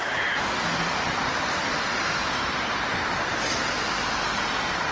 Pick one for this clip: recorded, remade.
recorded